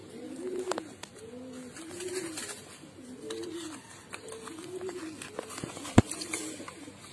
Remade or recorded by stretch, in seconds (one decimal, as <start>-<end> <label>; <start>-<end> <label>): 0.0-7.1 recorded